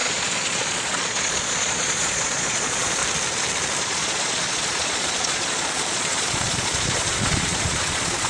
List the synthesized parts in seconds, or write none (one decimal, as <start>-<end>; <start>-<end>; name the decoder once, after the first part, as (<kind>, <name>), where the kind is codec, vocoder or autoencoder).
0.0-3.0 (vocoder, Vocos); 3.8-8.3